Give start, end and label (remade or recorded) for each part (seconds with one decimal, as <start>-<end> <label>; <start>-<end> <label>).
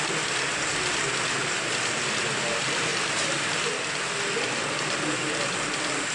0.0-6.1 recorded